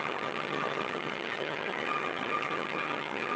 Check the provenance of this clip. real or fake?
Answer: fake